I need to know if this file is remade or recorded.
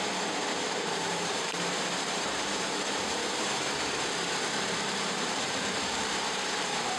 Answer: remade